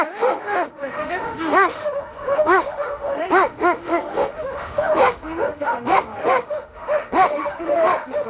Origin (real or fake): fake